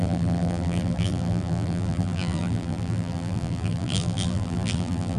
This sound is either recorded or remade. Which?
remade